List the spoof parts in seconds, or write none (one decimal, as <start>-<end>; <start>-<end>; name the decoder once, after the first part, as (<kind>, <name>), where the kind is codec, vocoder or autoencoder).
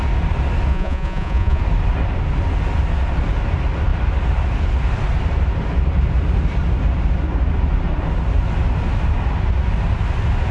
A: 0.7-1.6 (vocoder, Vocos)